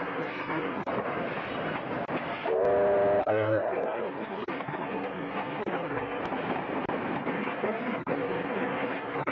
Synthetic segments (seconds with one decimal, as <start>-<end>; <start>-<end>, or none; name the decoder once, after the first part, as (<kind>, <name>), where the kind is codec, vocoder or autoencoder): 0.0-0.9 (codec, SNAC); 3.2-6.2; 7.3-9.3